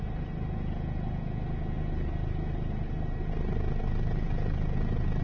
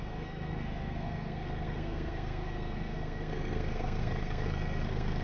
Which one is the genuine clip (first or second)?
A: first